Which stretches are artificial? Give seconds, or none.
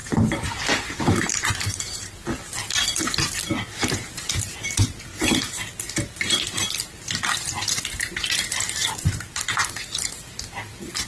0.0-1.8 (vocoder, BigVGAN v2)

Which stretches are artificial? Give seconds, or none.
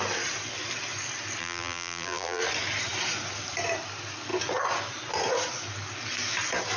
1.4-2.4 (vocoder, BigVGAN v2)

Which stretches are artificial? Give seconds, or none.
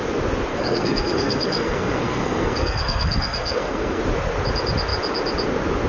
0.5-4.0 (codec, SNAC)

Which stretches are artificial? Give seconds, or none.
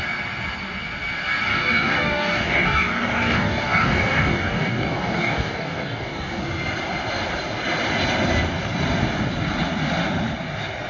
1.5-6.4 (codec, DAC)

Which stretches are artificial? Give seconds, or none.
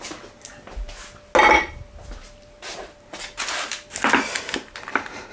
none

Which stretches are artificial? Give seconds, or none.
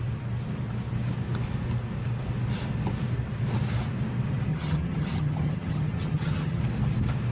4.5-6.6 (vocoder, HiFi-GAN)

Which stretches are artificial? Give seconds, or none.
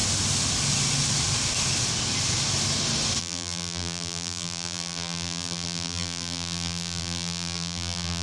3.2-8.2 (vocoder, BigVGAN v2)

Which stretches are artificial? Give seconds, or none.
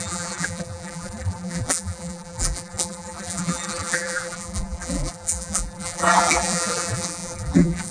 0.0-7.9 (vocoder, BigVGAN v2)